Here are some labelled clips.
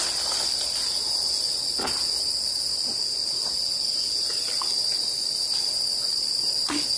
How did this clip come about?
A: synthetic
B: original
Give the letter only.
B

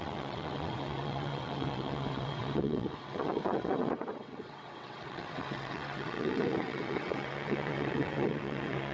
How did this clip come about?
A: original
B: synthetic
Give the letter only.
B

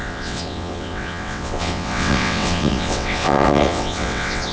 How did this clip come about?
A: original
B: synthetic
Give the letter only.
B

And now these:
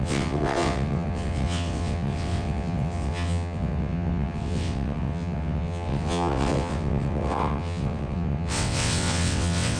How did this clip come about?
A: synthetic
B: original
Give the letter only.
A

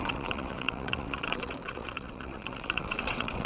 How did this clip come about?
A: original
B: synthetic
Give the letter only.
B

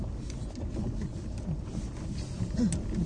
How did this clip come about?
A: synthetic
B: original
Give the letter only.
B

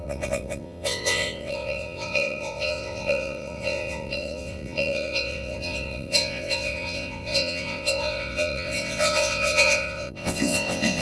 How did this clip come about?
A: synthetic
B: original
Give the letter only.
A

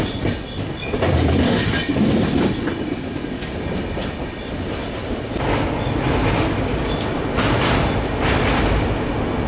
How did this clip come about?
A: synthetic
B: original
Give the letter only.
B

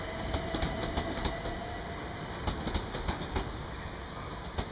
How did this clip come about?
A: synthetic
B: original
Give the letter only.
B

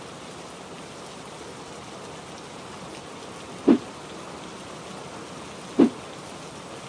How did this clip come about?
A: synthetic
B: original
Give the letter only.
B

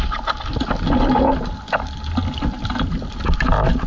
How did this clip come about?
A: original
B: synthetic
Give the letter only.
A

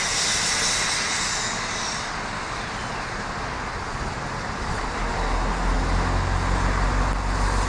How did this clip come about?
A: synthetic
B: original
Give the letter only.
B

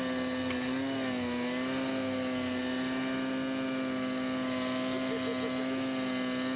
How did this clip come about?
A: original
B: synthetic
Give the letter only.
A